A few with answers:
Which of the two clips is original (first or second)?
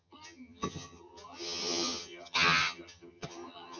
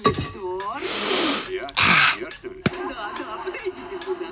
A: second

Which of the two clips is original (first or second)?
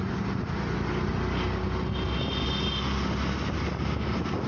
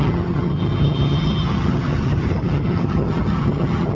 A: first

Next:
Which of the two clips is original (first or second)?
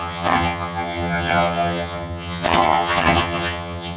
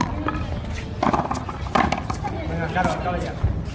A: second